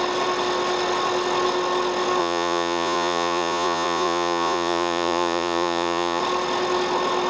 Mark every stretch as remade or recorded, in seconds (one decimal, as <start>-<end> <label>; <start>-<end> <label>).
0.0-2.2 recorded; 2.2-6.2 remade; 6.2-7.3 recorded

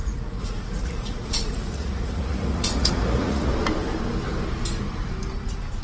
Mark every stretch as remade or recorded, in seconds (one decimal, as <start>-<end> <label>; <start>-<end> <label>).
0.0-3.5 remade; 3.5-5.8 recorded

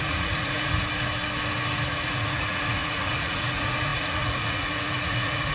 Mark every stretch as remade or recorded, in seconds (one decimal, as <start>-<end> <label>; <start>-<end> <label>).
0.0-0.8 remade; 0.8-1.9 recorded; 1.9-5.5 remade

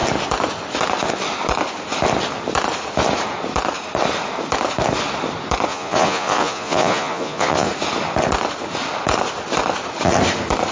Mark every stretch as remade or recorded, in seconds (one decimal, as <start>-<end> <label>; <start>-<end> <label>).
0.0-5.7 recorded; 5.7-7.7 remade; 7.7-10.7 recorded